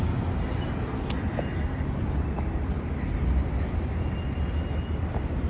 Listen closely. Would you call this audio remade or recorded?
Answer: recorded